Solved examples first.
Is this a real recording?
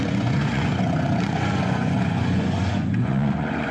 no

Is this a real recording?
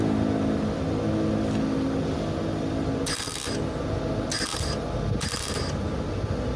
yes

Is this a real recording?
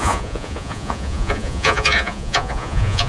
no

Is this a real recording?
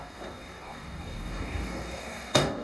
no